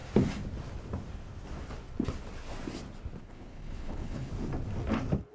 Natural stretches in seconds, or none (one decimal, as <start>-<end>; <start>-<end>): 0.0-3.2; 4.3-5.3